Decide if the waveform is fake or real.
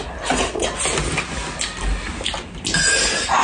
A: real